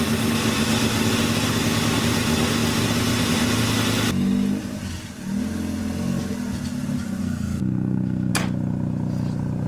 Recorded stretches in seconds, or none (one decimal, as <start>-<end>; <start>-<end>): 0.0-7.2; 8.3-9.7